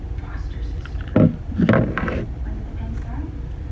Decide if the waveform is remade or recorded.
recorded